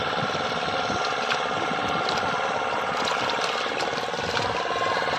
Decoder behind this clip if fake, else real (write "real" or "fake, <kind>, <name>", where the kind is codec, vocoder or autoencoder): real